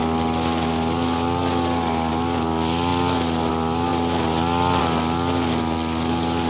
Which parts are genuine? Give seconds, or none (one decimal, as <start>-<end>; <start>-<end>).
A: 0.0-6.5